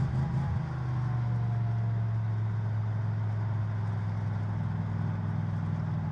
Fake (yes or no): no